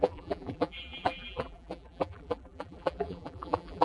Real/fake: fake